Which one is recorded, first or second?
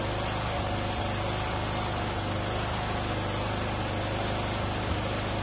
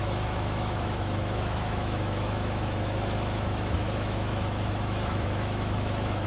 first